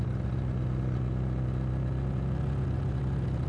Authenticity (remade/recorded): recorded